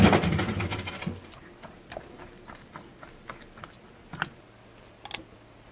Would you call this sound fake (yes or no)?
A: no